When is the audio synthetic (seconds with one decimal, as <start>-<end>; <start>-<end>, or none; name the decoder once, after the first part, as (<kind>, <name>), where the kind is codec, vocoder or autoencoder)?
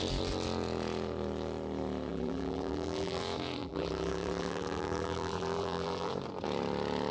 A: 2.1-3.2 (vocoder, BigVGAN v2); 3.6-6.1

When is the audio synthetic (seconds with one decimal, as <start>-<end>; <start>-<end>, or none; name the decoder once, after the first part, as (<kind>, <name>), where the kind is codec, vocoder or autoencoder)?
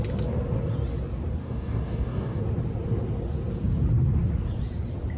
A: 1.4-2.4 (codec, DAC)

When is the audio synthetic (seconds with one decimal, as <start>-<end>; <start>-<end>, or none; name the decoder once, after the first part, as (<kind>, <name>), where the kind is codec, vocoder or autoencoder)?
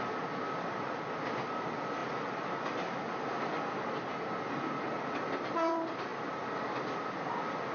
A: 0.0-2.0 (vocoder, BigVGAN v2); 3.3-4.1; 4.8-7.7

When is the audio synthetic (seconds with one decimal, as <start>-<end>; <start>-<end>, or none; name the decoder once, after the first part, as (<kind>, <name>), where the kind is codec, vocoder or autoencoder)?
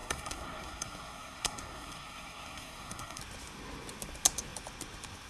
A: 0.0-3.2 (codec, SNAC)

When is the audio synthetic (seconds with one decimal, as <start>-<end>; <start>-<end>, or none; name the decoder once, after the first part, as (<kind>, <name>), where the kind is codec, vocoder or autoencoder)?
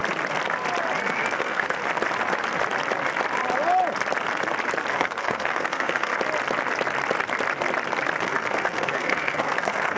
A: 1.1-1.8 (codec, SNAC); 4.9-6.1; 8.2-10.0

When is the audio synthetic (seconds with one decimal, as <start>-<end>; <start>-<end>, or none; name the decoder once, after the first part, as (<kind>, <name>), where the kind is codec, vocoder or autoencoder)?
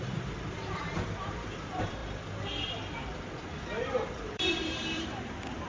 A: 0.0-2.0 (vocoder, BigVGAN v2); 4.2-5.7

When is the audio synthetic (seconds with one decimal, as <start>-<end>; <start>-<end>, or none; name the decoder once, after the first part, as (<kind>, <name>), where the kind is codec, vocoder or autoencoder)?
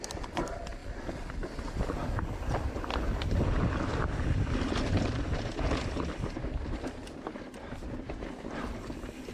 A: 0.0-2.0 (vocoder, BigVGAN v2); 3.3-9.3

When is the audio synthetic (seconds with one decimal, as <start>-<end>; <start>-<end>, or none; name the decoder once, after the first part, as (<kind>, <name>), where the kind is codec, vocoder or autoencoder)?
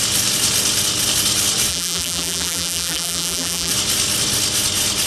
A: 1.7-3.7 (vocoder, BigVGAN v2)